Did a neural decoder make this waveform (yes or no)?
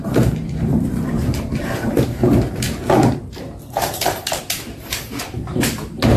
yes